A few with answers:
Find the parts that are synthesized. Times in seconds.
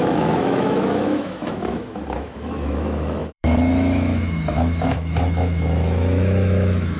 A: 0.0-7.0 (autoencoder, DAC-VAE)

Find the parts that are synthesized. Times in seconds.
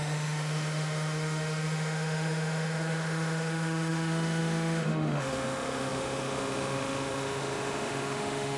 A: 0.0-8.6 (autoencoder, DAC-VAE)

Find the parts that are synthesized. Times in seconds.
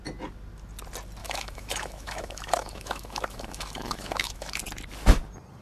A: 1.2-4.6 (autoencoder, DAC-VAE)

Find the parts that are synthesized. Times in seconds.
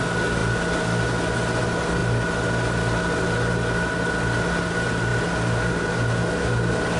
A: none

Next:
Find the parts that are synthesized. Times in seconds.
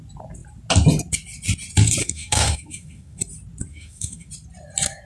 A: 2.0-3.2 (autoencoder, DAC-VAE); 3.7-4.3